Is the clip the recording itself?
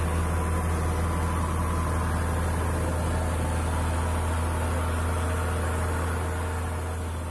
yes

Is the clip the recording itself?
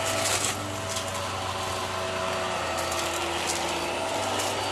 yes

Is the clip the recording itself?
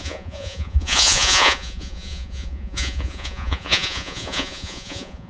no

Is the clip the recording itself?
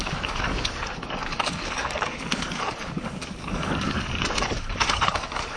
no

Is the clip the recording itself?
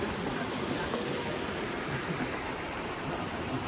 yes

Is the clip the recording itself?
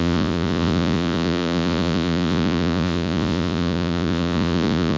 no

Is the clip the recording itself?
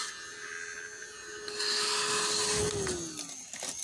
yes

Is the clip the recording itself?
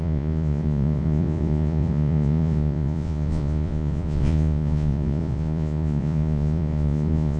no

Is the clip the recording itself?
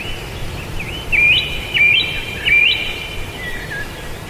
yes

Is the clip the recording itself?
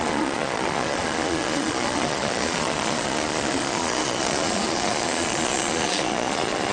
no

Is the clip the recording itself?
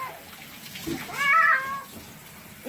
yes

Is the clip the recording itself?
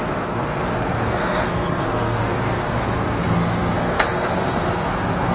no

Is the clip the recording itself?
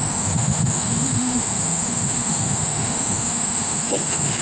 no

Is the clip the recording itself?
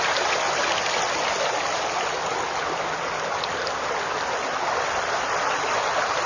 yes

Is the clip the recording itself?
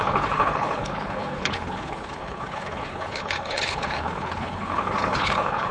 no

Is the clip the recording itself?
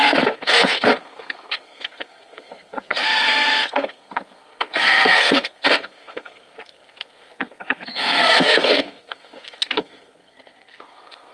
no